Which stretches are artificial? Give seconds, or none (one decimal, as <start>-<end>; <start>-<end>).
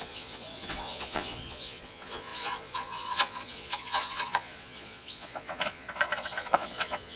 0.0-7.2